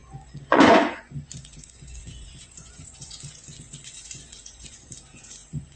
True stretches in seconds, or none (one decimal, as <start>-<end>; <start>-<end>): none